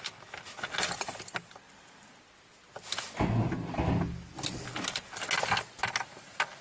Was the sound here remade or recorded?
recorded